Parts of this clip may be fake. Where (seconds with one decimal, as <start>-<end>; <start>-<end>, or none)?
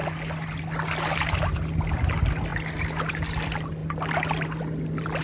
none